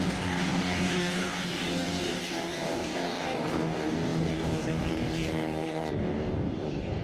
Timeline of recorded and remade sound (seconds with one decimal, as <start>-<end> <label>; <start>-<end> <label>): 0.0-7.0 remade